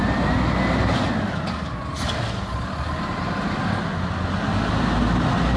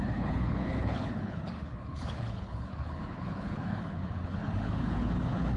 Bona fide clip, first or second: first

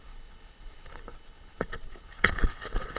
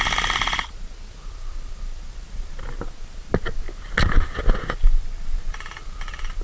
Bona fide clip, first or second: second